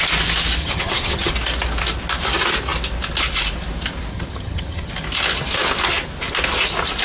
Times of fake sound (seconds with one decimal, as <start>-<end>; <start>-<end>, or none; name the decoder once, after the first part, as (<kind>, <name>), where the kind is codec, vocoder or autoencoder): 0.6-1.3 (vocoder, HiFi-GAN); 4.1-4.9